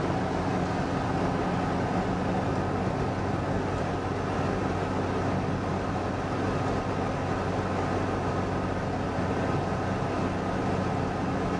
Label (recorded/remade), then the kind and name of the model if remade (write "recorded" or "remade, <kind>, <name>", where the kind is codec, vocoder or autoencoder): recorded